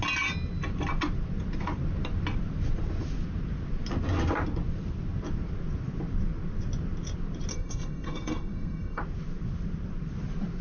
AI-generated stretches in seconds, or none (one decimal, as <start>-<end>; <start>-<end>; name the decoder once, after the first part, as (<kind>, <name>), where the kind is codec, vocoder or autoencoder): 7.5-9.0 (codec, SNAC)